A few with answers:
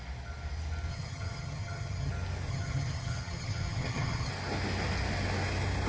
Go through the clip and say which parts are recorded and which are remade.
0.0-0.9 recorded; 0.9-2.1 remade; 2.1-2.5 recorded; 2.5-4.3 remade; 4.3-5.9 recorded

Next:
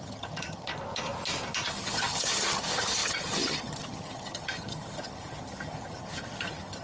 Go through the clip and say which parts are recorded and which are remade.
0.0-0.7 remade; 0.7-1.7 recorded; 1.7-6.8 remade

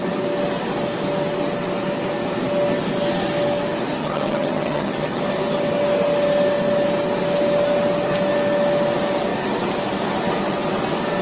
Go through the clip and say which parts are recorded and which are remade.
0.0-4.0 recorded; 4.0-5.2 remade; 5.2-11.2 recorded

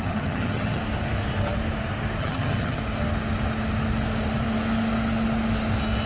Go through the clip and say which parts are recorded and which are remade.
0.0-0.8 remade; 0.8-2.2 recorded; 2.2-2.8 remade; 2.8-6.1 recorded

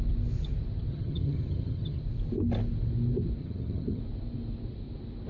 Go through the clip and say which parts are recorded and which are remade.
0.0-0.9 recorded; 0.9-2.0 remade; 2.0-3.4 recorded; 3.4-4.0 remade; 4.0-5.3 recorded

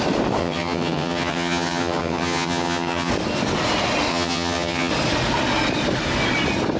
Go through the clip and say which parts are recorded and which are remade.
0.0-0.4 recorded; 0.4-3.1 remade; 3.1-4.1 recorded; 4.1-4.9 remade; 4.9-6.8 recorded